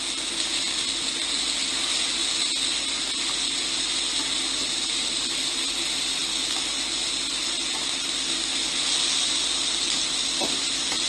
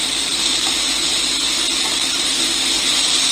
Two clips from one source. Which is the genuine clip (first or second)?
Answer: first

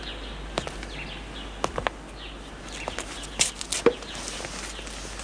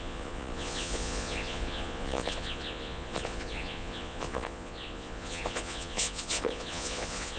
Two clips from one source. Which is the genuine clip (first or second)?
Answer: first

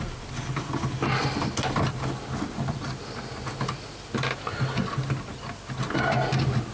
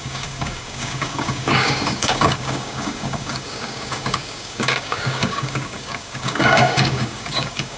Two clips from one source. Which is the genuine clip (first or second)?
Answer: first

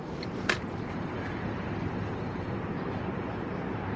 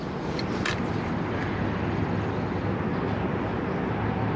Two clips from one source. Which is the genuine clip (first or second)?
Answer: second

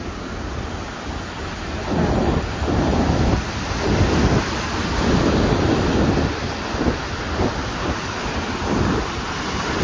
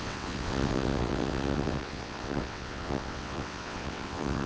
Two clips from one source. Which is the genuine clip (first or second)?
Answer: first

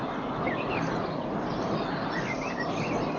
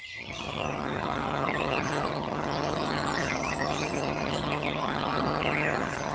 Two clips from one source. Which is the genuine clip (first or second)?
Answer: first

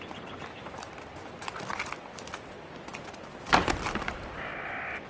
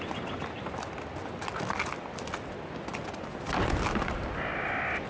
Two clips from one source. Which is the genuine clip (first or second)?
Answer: second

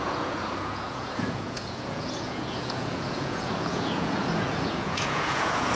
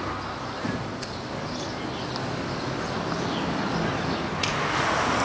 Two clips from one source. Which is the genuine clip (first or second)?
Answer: second